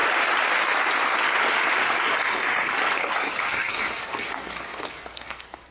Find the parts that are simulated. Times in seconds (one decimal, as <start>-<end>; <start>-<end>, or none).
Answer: 3.4-5.7